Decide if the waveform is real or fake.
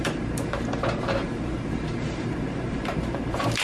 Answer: fake